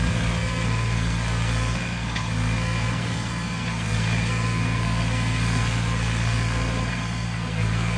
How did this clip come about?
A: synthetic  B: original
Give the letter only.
A